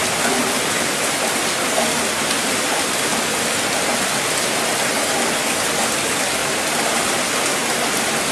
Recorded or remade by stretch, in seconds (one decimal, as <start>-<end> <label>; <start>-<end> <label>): 0.0-0.4 recorded; 0.4-3.2 remade; 3.2-6.4 recorded; 6.4-7.3 remade; 7.3-8.3 recorded